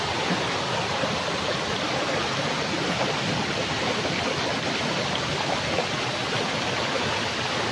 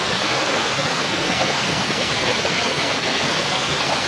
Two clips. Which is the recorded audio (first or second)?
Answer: first